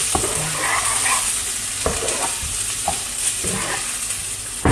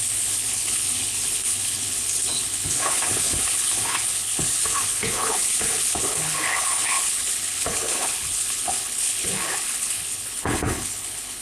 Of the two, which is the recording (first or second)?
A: first